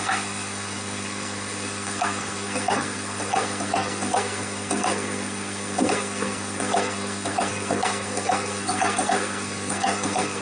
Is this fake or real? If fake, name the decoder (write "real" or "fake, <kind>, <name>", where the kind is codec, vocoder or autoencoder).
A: fake, codec, SNAC